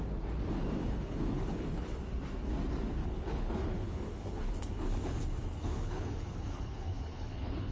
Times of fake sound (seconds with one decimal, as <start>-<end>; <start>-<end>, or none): 0.8-2.0; 3.0-7.7